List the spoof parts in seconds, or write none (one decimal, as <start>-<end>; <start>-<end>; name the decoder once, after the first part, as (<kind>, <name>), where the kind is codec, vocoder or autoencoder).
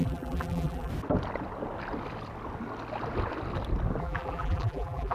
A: 0.0-0.9 (vocoder, BigVGAN v2); 4.0-5.1